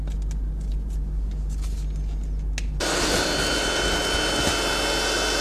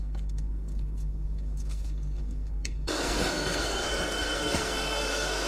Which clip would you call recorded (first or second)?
first